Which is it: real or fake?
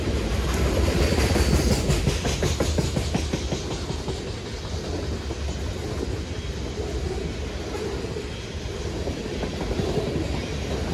real